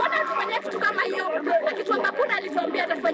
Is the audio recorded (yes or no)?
no